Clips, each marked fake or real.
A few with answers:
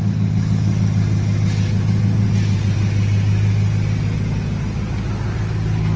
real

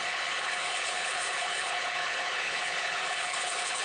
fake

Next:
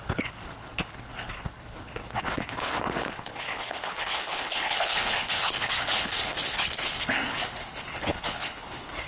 fake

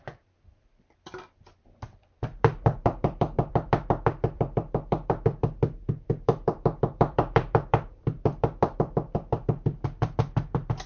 fake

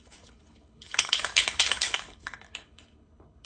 fake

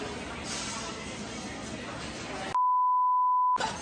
real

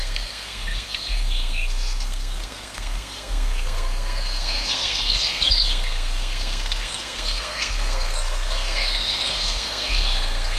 fake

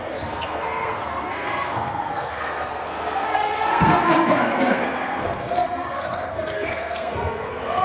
fake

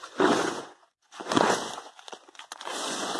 fake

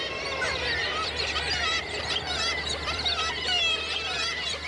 fake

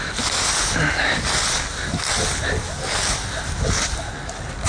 real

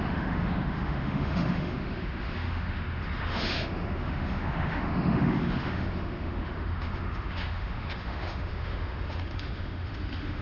fake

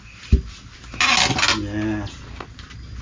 real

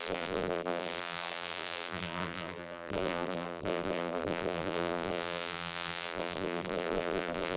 fake